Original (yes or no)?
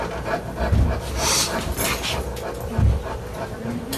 yes